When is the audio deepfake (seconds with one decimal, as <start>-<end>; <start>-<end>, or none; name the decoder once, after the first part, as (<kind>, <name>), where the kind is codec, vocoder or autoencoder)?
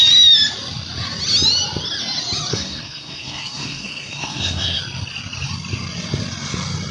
2.5-4.8 (codec, SNAC)